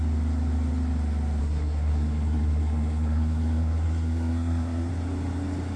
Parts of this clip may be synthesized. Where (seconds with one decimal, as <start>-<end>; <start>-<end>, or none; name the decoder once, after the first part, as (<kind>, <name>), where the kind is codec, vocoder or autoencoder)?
1.4-4.9 (codec, SNAC)